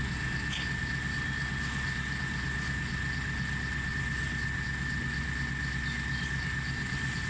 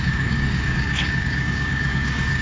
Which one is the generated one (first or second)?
second